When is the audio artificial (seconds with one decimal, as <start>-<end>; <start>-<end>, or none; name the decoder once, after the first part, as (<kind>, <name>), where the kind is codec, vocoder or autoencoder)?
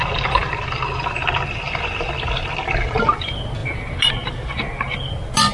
none